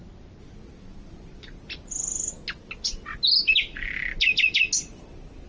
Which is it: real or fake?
real